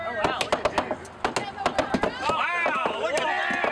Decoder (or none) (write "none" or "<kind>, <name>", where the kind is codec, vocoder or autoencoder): none